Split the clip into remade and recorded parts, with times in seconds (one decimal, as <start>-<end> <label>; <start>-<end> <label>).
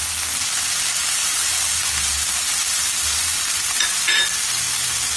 0.0-5.2 recorded